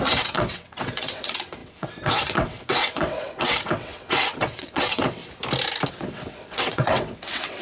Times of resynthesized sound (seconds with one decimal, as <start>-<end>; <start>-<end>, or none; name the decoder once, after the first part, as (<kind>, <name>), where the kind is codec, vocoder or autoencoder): 0.0-5.2 (vocoder, WaveNeXt); 5.9-7.6